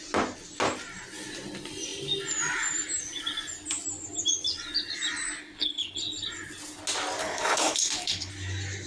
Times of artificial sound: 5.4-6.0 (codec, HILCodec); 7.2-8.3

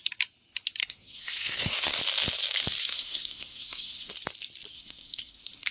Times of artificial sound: 0.8-2.0 (codec, SNAC); 2.8-4.1; 4.7-5.7

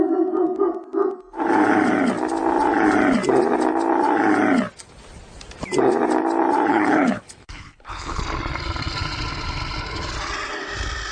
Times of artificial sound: 6.7-8.2 (codec, HILCodec)

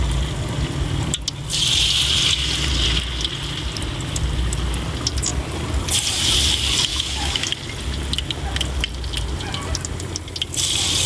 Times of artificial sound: 6.9-7.5 (autoencoder, DAC-VAE)